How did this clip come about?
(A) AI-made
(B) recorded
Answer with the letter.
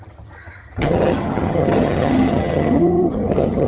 A